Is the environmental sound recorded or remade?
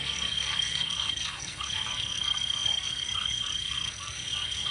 remade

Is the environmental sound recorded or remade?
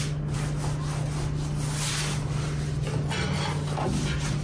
recorded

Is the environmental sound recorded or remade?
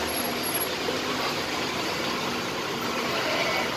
recorded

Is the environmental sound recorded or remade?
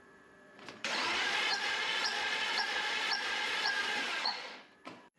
remade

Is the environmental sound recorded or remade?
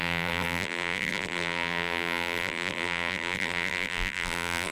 remade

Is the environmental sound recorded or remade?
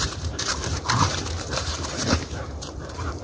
remade